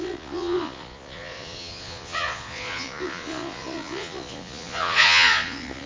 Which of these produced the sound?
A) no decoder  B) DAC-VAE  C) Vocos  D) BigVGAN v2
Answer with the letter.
C